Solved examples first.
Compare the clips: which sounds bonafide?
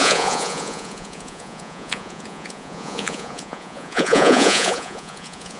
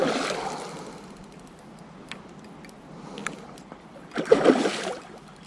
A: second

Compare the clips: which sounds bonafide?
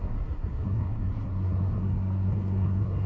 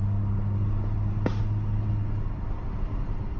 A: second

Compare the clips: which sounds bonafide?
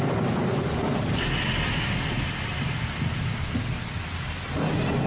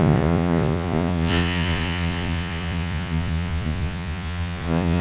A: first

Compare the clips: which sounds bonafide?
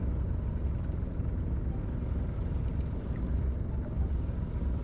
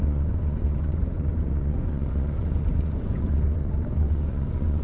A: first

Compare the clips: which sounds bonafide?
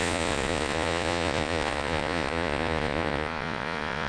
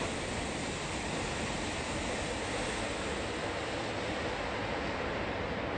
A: second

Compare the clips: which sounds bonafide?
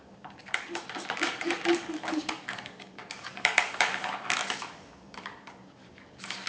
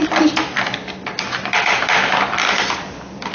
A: second